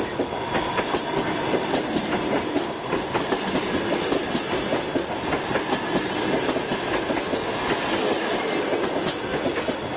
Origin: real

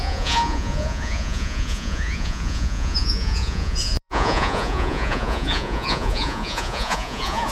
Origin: fake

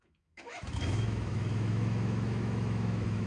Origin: fake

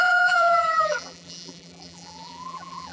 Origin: fake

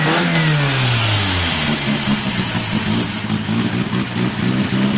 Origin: real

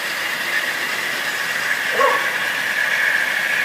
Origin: fake